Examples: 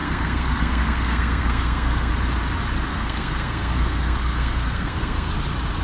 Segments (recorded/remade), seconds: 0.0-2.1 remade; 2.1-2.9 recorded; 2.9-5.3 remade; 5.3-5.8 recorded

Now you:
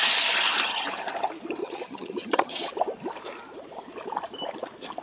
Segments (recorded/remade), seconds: 0.0-1.6 recorded; 1.6-2.7 remade; 2.7-5.0 recorded

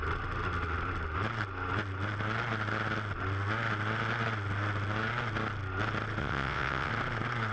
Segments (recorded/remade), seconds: 0.0-6.2 recorded; 6.2-6.9 remade; 6.9-7.5 recorded